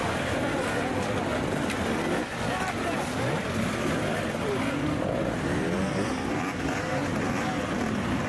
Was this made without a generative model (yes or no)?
yes